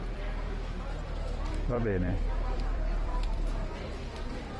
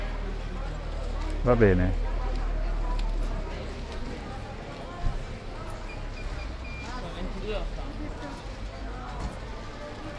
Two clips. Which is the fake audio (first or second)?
first